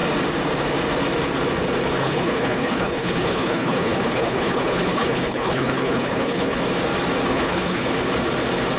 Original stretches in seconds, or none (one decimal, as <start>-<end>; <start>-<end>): 0.0-2.0; 6.6-7.3; 7.9-8.8